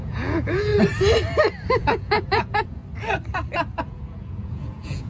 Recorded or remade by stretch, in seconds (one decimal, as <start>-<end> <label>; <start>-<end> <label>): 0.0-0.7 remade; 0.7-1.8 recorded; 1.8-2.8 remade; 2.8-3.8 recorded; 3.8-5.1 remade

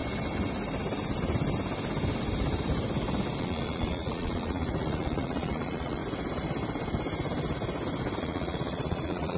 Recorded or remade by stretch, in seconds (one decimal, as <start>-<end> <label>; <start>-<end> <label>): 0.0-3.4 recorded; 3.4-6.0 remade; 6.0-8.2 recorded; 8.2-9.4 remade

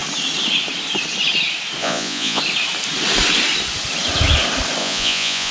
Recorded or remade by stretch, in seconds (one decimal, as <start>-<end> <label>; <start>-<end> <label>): 0.0-1.8 recorded; 1.8-2.4 remade; 2.4-4.8 recorded; 4.8-5.5 remade